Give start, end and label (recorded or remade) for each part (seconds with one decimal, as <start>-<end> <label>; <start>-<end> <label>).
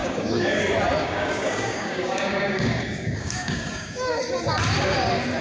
0.0-0.6 remade; 0.6-1.0 recorded; 1.0-4.2 remade; 4.2-5.4 recorded